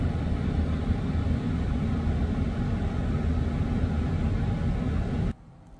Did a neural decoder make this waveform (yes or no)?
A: no